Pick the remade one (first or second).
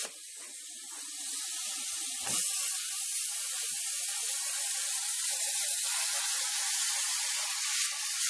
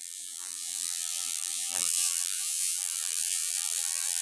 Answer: second